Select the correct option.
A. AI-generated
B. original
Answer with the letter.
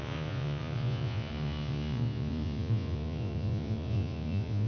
A